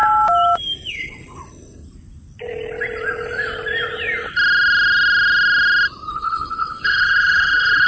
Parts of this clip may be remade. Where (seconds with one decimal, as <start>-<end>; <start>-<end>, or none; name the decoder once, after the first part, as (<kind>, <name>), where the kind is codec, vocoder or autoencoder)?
0.9-1.4 (codec, HILCodec); 6.1-7.9